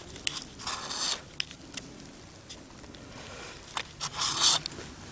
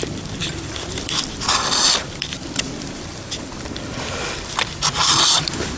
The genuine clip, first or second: first